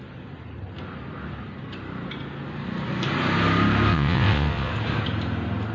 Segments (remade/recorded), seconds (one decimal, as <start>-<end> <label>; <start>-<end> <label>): 0.0-3.9 recorded; 3.9-4.7 remade; 4.7-5.7 recorded